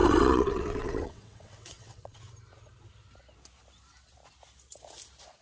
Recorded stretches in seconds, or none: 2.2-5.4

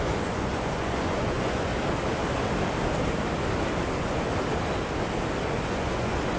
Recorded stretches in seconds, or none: 1.7-3.9; 4.3-5.6

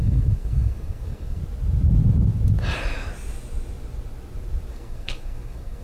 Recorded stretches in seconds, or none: 1.4-4.7

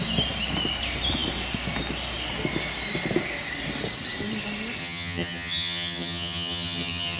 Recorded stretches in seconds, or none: 0.0-4.8

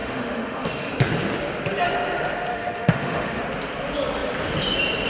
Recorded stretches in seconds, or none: 0.9-2.5; 3.4-5.1

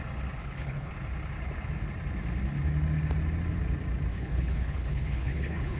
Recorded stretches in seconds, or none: 0.0-0.4; 0.9-4.1